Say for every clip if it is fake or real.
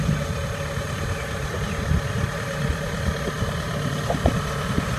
real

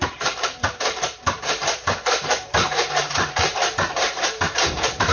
fake